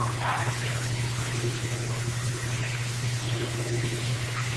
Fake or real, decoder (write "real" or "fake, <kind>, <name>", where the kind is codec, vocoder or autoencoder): fake, codec, HILCodec